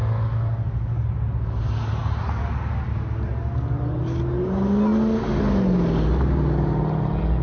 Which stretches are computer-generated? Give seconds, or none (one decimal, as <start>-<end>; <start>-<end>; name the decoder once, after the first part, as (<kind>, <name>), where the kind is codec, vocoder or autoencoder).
none